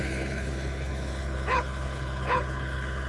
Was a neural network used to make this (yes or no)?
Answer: yes